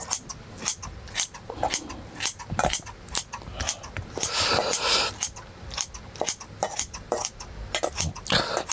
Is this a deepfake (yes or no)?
no